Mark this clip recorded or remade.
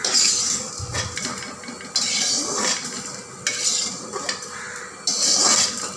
recorded